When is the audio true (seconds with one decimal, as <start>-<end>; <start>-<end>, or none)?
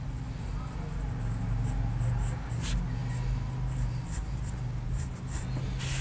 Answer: 0.0-6.0